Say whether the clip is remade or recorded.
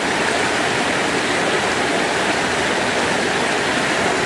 recorded